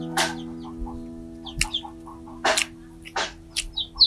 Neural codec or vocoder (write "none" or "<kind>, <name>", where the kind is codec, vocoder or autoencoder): none